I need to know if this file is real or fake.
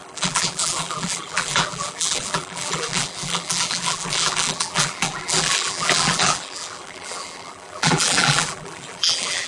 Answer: fake